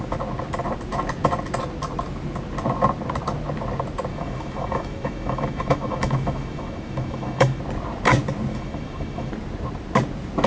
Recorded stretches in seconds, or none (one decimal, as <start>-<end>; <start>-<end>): 0.0-4.1; 7.6-8.5; 9.3-10.5